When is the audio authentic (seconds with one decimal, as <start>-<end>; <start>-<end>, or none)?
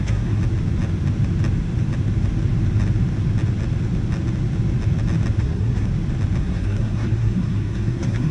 0.4-5.4; 5.9-6.4